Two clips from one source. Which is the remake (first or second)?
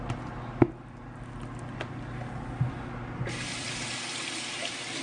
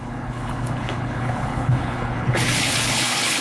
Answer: second